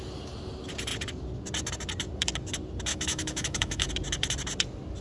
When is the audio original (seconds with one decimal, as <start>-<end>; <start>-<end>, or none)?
0.0-2.9; 3.9-5.0